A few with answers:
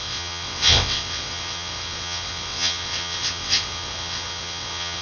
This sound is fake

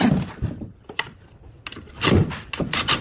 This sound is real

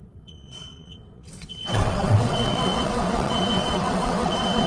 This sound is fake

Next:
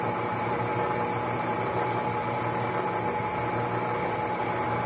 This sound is real